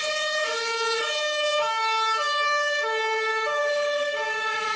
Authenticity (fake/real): fake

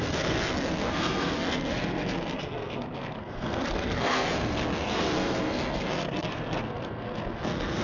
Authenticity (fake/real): fake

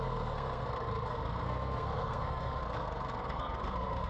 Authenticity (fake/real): fake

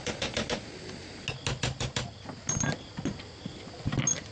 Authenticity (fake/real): real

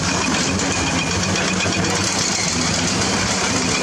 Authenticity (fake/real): real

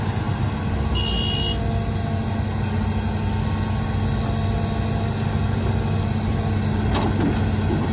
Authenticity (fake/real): real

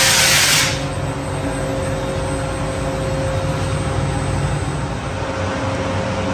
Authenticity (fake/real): real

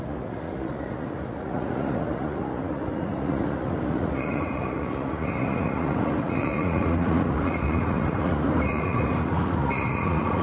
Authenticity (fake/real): fake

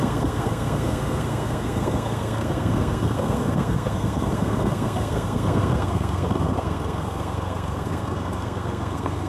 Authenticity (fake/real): fake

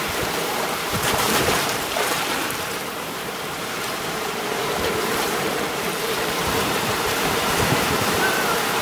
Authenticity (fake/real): fake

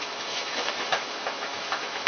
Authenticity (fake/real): fake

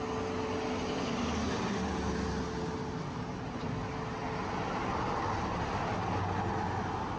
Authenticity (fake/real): real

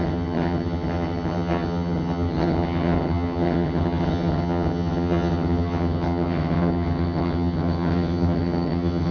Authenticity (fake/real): fake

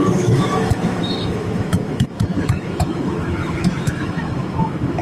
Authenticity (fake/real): fake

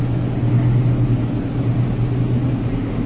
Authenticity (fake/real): real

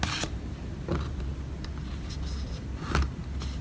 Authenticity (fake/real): real